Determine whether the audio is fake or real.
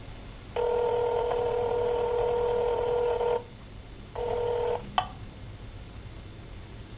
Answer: real